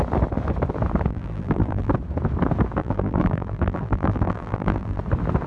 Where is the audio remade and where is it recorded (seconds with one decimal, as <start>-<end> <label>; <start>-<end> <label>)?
0.0-1.1 recorded; 1.1-1.9 remade; 1.9-2.8 recorded; 2.8-5.0 remade; 5.0-5.5 recorded